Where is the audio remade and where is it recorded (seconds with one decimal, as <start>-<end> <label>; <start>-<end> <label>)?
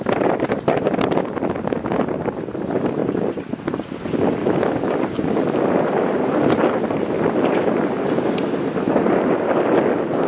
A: 0.0-10.3 recorded